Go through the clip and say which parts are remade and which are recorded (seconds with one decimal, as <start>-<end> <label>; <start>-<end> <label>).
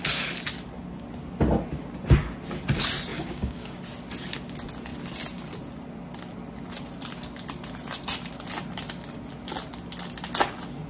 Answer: 0.0-3.1 recorded; 3.1-3.8 remade; 3.8-10.9 recorded